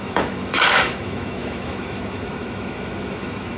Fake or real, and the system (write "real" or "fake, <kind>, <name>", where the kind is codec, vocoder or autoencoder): fake, autoencoder, DAC-VAE